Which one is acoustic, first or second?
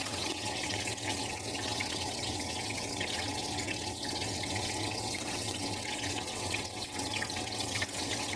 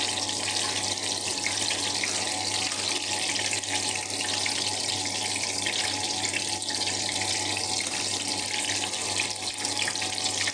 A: second